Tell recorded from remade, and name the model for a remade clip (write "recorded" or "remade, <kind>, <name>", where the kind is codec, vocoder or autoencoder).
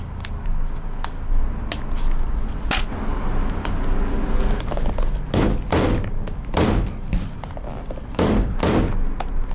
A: recorded